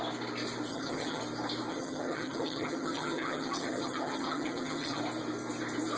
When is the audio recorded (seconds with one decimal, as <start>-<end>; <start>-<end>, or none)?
0.0-0.7; 1.2-1.7; 5.0-6.0